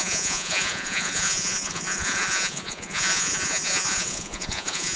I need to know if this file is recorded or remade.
remade